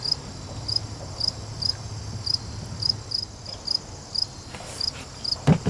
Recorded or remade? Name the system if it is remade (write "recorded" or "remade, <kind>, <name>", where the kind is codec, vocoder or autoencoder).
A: recorded